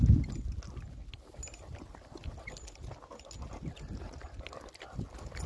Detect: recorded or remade recorded